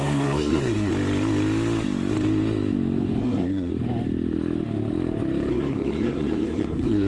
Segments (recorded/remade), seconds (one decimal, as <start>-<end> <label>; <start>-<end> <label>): 0.0-0.9 remade; 0.9-3.2 recorded; 3.2-3.7 remade; 3.7-5.5 recorded; 5.5-7.1 remade